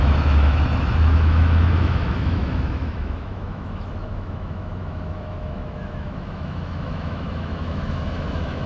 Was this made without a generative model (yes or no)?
no